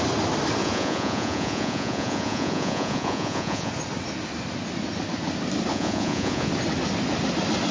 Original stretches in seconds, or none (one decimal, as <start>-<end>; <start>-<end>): 0.0-0.6; 3.7-5.7; 6.5-7.7